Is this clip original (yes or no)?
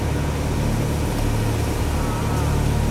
yes